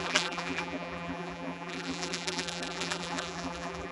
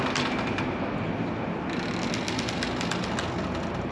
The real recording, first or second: second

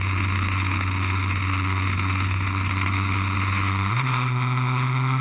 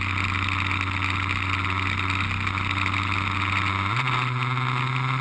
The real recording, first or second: second